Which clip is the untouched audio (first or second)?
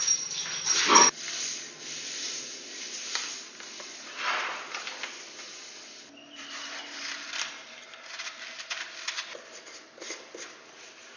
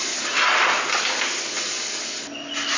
second